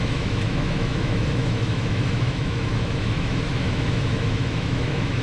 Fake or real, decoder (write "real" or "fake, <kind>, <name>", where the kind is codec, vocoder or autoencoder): fake, autoencoder, DAC-VAE